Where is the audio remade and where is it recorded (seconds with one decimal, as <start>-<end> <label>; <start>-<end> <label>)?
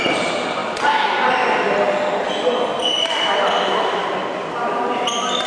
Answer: 0.0-3.3 recorded; 3.3-4.0 remade; 4.0-5.5 recorded